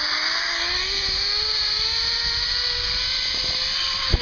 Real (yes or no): yes